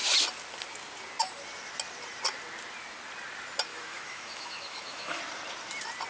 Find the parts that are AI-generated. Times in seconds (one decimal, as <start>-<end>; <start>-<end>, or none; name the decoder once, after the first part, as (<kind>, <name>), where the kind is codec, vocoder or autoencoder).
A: 3.7-5.2 (autoencoder, DAC-VAE)